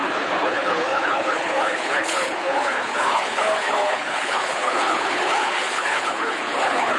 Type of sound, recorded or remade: remade